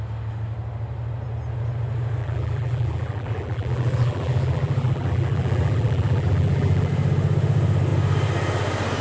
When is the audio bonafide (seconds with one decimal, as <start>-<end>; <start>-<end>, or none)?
0.0-2.2; 6.9-9.0